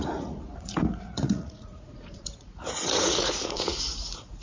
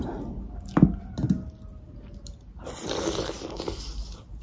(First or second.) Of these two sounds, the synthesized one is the first